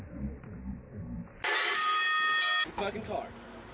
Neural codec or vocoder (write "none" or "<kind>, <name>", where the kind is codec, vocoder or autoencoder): none